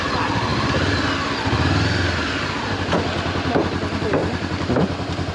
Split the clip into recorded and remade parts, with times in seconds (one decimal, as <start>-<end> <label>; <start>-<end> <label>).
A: 0.0-4.2 recorded; 4.2-5.3 remade